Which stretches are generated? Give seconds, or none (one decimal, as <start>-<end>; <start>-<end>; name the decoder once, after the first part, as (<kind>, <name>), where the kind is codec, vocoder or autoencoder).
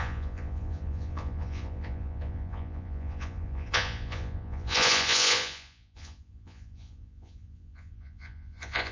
0.0-8.9 (vocoder, Vocos)